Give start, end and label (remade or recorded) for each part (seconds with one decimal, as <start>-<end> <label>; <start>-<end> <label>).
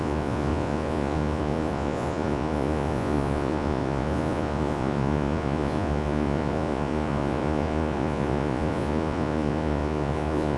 0.0-10.6 remade